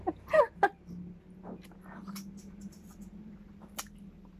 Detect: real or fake real